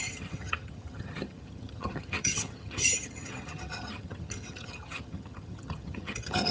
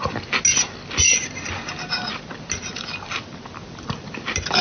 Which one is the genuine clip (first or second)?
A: second